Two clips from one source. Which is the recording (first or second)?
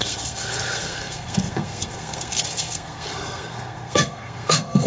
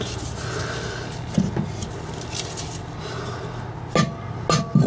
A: second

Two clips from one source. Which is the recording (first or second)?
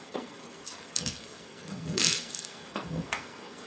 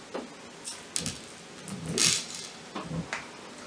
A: second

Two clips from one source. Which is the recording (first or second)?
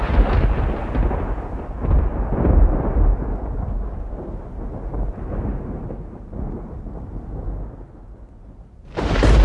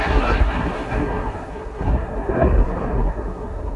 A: first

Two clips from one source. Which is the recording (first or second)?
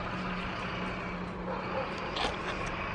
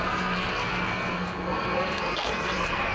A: first